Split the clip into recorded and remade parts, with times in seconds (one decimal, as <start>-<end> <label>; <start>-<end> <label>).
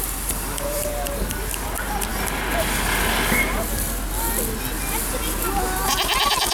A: 0.0-6.5 recorded